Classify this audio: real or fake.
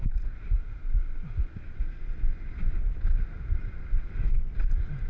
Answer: real